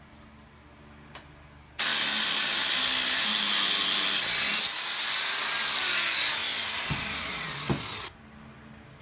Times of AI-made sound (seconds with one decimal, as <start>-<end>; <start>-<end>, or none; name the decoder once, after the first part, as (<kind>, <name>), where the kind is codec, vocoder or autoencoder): 6.4-8.2 (vocoder, BigVGAN v2)

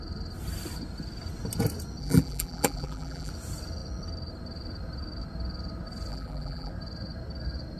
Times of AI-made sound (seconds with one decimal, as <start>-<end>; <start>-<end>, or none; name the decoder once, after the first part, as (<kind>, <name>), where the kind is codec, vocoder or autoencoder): 2.0-3.3 (vocoder, BigVGAN v2); 6.1-6.7